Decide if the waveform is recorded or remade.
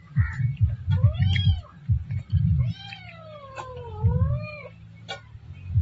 recorded